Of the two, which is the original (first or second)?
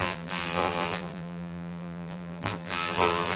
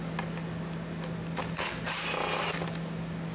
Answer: second